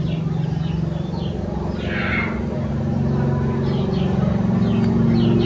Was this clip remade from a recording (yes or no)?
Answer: no